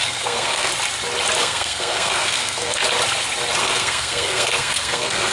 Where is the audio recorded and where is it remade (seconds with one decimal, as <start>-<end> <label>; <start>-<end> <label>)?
0.0-0.7 remade; 0.7-1.4 recorded; 1.4-2.8 remade; 2.8-3.6 recorded; 3.6-5.3 remade